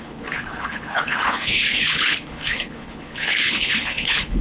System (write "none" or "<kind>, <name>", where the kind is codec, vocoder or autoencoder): codec, HILCodec